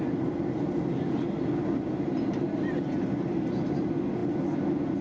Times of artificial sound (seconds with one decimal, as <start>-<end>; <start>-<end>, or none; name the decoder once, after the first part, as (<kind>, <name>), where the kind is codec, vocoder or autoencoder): none